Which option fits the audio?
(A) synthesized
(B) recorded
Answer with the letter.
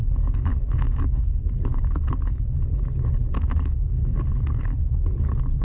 A